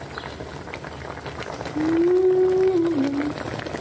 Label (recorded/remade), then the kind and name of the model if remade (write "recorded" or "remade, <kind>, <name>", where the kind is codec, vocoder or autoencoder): recorded